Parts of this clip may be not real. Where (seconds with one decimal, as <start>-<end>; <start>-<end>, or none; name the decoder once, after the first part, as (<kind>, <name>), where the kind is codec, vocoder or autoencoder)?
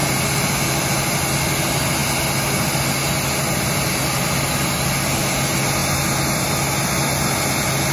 none